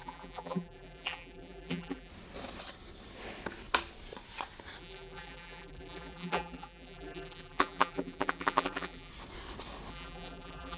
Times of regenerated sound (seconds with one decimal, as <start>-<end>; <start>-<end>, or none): 0.0-2.1; 4.8-9.1; 9.9-10.8

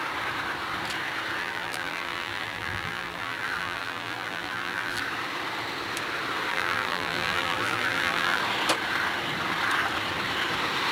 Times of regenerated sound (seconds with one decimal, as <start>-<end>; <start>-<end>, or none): 1.4-5.0; 6.5-8.4

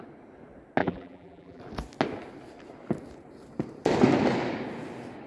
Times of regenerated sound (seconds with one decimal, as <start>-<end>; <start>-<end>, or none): 0.8-1.6

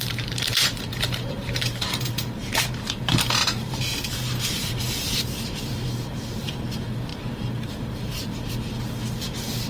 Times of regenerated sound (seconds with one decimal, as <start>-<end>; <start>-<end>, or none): 0.0-9.7

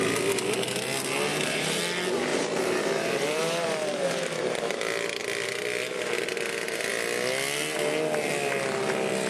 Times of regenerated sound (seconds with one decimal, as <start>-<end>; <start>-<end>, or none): 1.3-1.8; 2.3-4.8

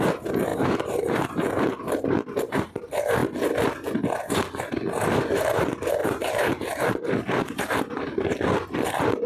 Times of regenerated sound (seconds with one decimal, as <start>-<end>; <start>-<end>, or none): 0.5-2.8; 6.0-8.2